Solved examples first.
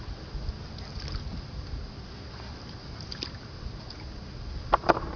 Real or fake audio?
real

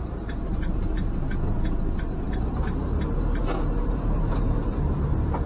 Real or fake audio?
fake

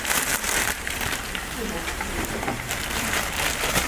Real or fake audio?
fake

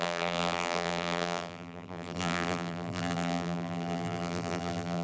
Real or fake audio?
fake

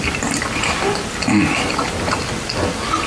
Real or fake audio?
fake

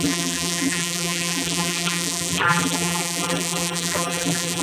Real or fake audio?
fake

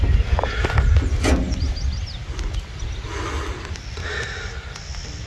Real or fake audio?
real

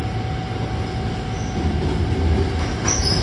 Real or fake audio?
real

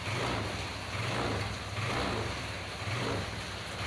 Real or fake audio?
real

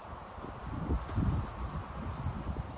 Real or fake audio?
real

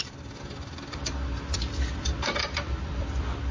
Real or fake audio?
fake